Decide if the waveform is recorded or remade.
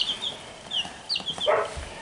recorded